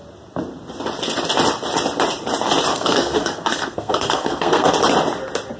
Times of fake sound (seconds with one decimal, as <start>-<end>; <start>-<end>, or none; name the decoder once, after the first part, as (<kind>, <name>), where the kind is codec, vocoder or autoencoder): 2.7-4.7 (codec, SNAC)